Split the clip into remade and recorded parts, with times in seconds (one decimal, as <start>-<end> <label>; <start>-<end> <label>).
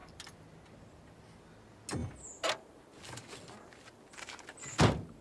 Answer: 0.0-5.2 recorded